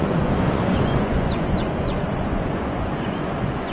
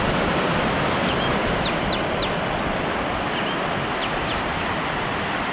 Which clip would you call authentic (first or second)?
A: second